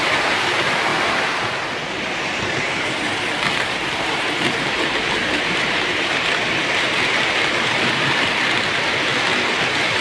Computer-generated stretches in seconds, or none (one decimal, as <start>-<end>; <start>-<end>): 0.0-9.1; 9.6-10.0